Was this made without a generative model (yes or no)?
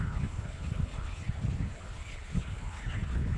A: no